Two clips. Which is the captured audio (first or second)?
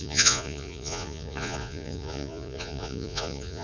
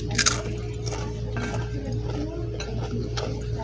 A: second